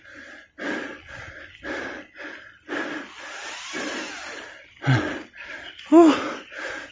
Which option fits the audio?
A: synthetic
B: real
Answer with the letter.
B